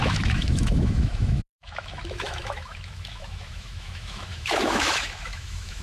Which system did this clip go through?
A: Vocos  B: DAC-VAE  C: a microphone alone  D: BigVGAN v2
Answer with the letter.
B